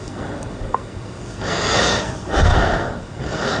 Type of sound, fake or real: fake